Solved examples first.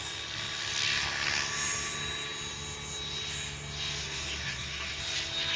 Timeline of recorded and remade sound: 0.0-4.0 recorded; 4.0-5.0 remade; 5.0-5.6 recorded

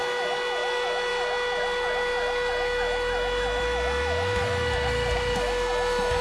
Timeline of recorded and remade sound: 0.0-6.2 recorded

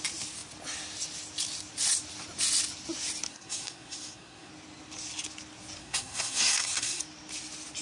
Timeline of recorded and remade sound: 0.0-3.3 recorded; 3.3-4.5 remade; 4.5-5.8 recorded; 5.8-7.0 remade; 7.0-7.8 recorded

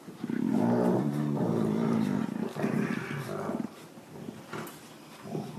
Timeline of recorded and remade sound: 0.0-5.6 recorded

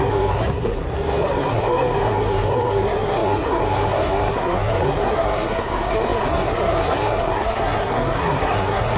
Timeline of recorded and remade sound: 0.0-9.0 remade

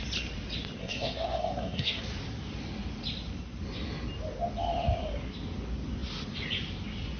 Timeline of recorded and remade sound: 0.0-0.8 recorded; 0.8-2.0 remade; 2.0-7.2 recorded